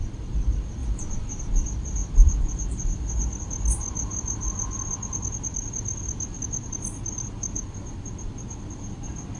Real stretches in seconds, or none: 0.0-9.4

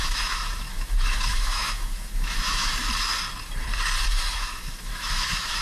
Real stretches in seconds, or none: 2.7-4.3

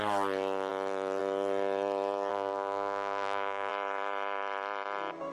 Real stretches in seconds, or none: 0.0-2.3; 3.7-5.3